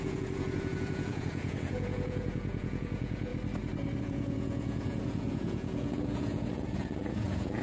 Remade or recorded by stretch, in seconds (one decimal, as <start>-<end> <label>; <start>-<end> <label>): 0.0-3.3 remade; 3.3-4.0 recorded; 4.0-7.6 remade